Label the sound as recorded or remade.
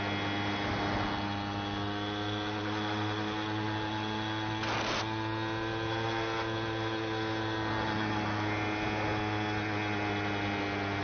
recorded